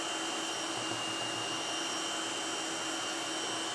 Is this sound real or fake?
real